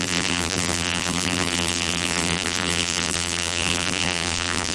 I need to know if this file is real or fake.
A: fake